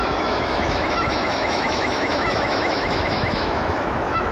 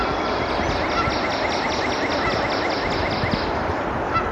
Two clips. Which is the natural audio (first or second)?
second